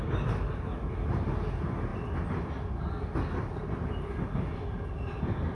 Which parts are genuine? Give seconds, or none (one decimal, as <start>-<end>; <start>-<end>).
0.0-5.5